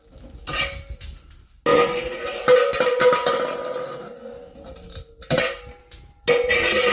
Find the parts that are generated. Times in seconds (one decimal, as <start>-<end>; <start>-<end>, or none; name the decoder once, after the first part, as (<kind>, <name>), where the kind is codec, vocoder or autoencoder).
none